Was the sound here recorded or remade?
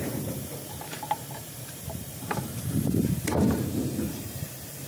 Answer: remade